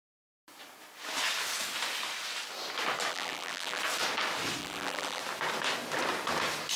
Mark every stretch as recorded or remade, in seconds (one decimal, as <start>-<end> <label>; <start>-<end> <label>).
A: 0.0-3.1 recorded; 3.1-3.8 remade; 3.8-4.6 recorded; 4.6-5.2 remade; 5.2-6.8 recorded

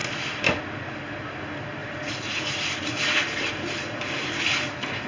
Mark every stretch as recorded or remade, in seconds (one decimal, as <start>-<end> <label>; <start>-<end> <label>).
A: 0.0-1.8 recorded; 1.8-4.2 remade; 4.2-5.1 recorded

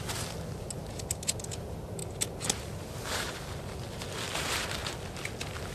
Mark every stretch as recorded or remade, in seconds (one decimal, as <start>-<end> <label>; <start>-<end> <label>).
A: 0.0-5.7 recorded